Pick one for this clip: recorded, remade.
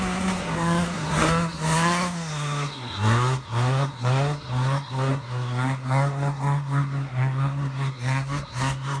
remade